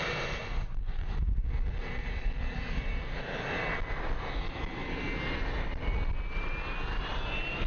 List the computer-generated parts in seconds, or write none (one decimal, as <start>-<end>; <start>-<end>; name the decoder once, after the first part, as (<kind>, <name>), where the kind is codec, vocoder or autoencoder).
0.4-1.2 (vocoder, Vocos)